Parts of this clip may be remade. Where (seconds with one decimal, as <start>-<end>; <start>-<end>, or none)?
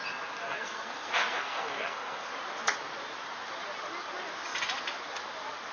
0.4-2.3